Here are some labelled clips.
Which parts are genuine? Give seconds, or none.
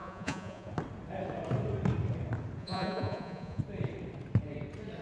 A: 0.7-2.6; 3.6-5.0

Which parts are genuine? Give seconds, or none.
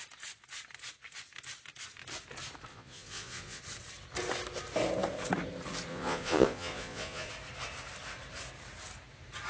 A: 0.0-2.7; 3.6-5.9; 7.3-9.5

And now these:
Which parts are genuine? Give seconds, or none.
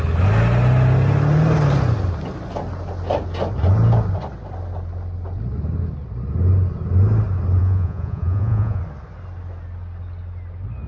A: 0.0-7.6; 8.8-10.9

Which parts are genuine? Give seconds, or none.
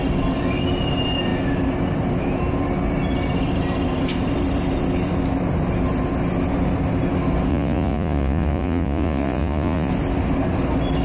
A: 0.0-7.5; 9.9-11.0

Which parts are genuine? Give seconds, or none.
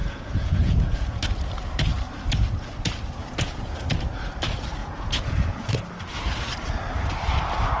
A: 1.2-3.2; 3.9-4.8; 5.7-7.8